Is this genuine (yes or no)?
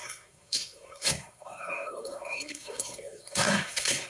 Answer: no